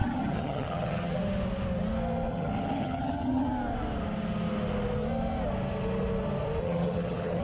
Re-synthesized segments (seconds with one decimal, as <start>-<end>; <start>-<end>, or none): 0.0-1.2; 2.3-3.5; 6.6-7.4